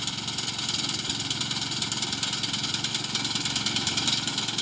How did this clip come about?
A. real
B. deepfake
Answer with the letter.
A